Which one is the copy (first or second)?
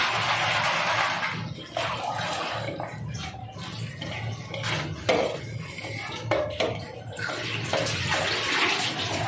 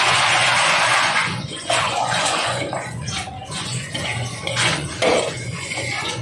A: second